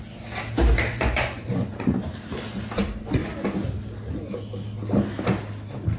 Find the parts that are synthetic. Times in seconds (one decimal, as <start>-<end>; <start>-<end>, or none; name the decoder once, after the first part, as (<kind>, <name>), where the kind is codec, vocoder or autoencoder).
0.9-2.0 (vocoder, Vocos)

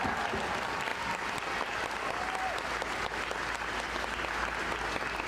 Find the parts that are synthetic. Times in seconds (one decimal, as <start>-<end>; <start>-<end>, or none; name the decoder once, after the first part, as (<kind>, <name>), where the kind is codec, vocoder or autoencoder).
none

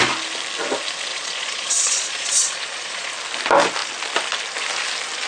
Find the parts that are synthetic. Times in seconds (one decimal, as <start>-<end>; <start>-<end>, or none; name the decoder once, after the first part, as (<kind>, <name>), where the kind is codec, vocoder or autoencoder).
1.1-3.1 (vocoder, Vocos)

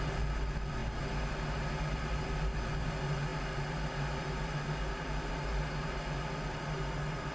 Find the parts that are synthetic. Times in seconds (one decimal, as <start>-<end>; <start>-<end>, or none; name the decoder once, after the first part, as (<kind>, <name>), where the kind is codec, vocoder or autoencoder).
none

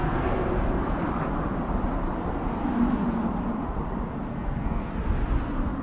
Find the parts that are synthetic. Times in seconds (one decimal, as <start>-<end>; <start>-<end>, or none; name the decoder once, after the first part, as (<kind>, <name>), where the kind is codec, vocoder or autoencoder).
0.0-0.5 (codec, SNAC); 4.3-4.9

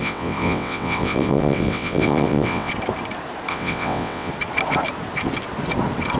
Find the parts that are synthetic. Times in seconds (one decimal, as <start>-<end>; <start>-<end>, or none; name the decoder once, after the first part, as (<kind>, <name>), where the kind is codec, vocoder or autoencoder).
0.0-2.7 (vocoder, WaveNeXt); 3.5-4.3

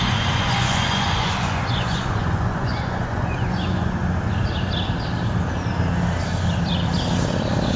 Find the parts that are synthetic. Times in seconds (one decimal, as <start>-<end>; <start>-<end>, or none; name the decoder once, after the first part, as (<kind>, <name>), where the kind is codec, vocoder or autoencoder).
0.0-4.0 (vocoder, Vocos)

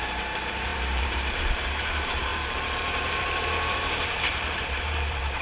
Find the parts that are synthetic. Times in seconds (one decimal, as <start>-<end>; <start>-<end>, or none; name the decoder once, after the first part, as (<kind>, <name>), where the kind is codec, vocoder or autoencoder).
0.0-5.4 (vocoder, BigVGAN v2)